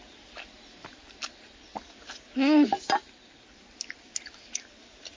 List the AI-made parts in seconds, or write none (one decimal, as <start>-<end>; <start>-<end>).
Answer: none